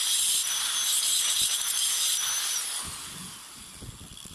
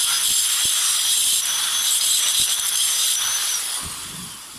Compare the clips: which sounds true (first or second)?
first